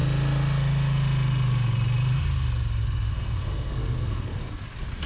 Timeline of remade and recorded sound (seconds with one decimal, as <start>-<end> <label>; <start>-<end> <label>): 0.0-3.1 recorded; 3.1-4.3 remade; 4.3-5.1 recorded